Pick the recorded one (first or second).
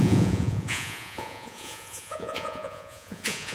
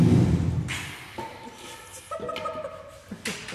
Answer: second